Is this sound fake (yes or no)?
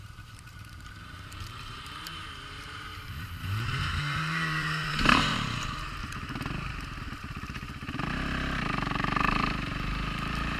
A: yes